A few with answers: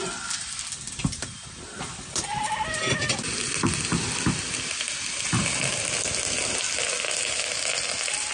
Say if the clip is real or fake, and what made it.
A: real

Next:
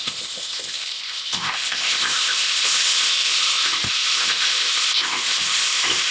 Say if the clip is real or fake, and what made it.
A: fake, codec, ZipCodec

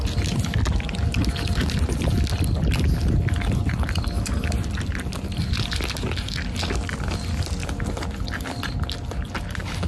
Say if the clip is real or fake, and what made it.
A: real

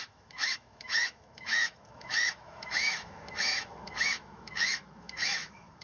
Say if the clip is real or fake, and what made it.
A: fake, autoencoder, DAC-VAE